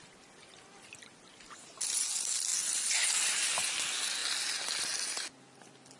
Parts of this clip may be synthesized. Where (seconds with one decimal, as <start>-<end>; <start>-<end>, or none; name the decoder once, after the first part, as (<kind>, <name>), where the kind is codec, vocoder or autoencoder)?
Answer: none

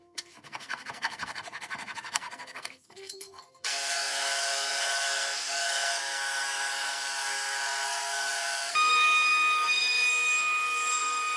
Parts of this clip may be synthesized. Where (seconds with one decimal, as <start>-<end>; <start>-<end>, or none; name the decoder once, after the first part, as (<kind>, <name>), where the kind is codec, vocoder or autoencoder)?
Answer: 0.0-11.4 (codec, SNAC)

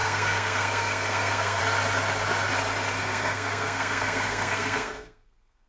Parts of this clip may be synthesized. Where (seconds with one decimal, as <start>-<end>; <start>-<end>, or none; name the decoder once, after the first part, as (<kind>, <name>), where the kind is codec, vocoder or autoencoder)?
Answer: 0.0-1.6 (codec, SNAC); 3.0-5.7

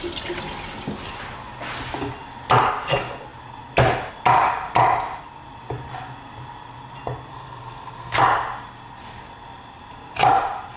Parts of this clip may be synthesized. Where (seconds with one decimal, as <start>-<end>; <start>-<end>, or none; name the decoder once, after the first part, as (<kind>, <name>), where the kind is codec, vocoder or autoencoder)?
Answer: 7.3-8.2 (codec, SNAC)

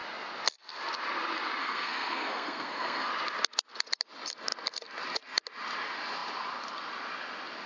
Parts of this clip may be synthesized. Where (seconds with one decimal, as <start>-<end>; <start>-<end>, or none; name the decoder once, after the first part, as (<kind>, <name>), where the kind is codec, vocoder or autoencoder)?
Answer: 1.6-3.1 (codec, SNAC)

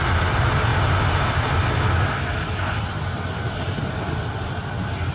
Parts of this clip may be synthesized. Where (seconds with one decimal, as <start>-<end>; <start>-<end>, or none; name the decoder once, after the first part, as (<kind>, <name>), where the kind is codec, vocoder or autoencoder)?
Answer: none

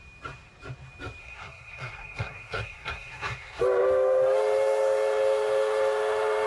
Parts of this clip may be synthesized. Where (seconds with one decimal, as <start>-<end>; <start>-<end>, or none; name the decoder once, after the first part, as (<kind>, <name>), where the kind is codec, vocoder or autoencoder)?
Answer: 1.2-3.6 (codec, SNAC)

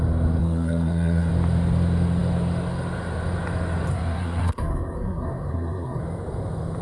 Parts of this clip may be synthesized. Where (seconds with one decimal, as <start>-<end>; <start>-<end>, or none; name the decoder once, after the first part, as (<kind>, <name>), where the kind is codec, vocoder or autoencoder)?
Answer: 0.4-1.3 (codec, SNAC); 3.9-6.0